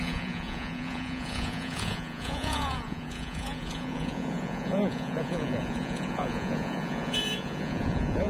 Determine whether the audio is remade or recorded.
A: remade